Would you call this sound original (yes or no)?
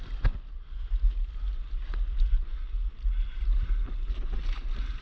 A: yes